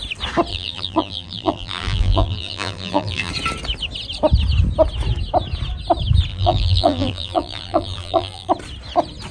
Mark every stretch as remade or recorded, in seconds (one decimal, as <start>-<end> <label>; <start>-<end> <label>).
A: 0.0-0.5 recorded; 0.5-3.3 remade; 3.3-6.3 recorded; 6.3-8.5 remade; 8.5-9.3 recorded